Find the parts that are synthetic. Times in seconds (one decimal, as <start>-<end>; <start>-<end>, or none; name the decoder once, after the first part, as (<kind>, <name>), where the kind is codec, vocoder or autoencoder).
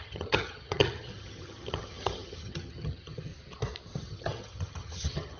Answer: 0.0-3.3 (vocoder, HiFi-GAN); 4.0-5.4